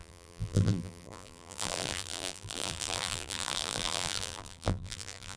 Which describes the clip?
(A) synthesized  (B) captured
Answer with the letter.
A